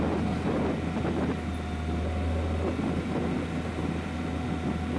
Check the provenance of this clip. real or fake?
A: real